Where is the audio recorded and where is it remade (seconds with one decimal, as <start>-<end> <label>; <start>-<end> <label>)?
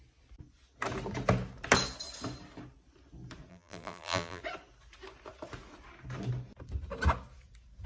0.0-3.5 recorded; 3.5-4.4 remade; 4.4-7.9 recorded